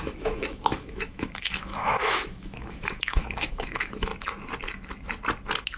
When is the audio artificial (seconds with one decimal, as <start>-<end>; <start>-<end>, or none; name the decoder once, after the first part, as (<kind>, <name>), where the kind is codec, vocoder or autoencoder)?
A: 0.0-4.1 (autoencoder, DAC-VAE)